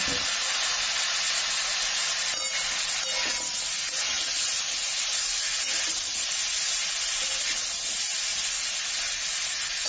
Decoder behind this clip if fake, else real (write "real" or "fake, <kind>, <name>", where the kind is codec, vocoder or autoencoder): real